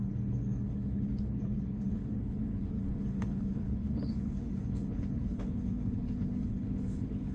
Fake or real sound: fake